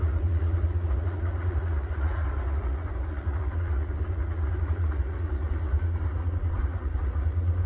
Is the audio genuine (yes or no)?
no